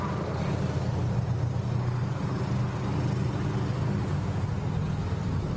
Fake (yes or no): no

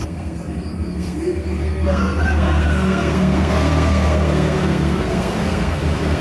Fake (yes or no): yes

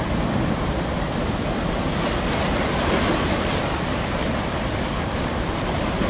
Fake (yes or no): no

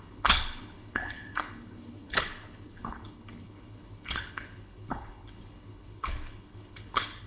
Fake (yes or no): yes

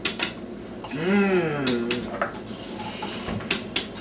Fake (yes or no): no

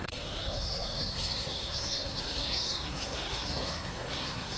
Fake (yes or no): yes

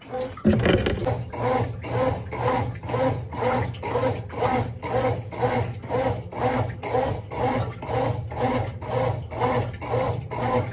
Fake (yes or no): no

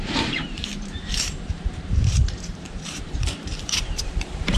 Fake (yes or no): yes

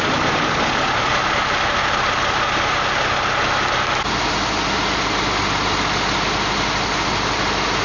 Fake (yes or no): no